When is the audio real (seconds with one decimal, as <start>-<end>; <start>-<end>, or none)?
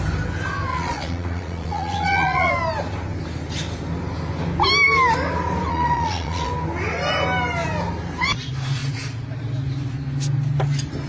0.0-0.7; 2.5-5.7; 6.5-11.1